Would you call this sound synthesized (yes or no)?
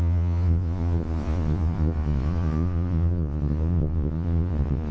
yes